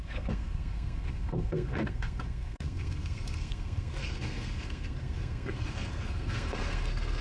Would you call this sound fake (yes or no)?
yes